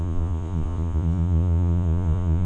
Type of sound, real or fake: fake